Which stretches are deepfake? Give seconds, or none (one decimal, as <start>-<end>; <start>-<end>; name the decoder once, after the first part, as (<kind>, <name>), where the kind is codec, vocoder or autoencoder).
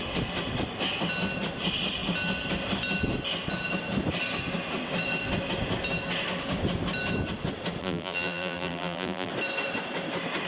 7.8-9.3 (vocoder, BigVGAN v2)